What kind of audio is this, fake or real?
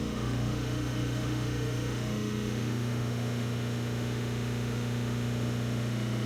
fake